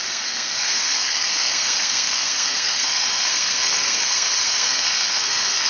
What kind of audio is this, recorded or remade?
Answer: remade